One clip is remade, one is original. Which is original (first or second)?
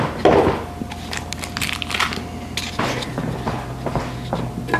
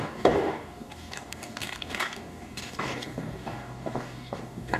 first